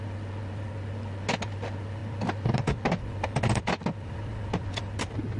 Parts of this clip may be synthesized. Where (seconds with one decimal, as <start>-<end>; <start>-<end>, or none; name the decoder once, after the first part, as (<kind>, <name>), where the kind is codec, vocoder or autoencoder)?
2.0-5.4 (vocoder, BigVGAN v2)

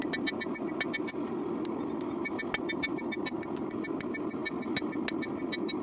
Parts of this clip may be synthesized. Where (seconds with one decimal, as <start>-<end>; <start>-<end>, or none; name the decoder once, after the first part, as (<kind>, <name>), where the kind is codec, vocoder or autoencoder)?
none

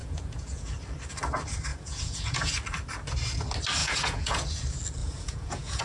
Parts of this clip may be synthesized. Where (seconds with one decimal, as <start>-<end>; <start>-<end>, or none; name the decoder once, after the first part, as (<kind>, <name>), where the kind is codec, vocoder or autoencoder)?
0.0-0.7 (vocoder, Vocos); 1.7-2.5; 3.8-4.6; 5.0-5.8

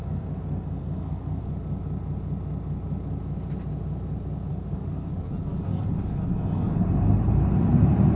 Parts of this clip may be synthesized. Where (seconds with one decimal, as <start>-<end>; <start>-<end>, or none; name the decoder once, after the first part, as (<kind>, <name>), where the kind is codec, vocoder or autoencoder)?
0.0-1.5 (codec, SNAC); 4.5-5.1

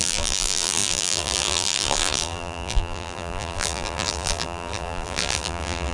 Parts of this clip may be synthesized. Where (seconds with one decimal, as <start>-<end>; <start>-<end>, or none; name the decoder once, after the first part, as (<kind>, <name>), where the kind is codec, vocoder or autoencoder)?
0.0-5.9 (vocoder, BigVGAN v2)